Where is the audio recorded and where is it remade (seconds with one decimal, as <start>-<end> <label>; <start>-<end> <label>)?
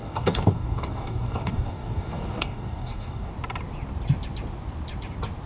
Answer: 0.0-3.3 remade; 3.3-5.5 recorded